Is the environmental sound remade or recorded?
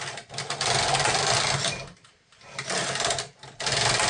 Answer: recorded